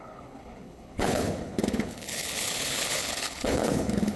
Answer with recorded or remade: remade